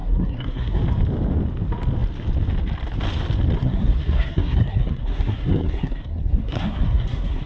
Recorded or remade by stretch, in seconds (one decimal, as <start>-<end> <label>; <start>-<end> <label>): 0.0-0.8 remade; 0.8-3.6 recorded; 3.6-7.5 remade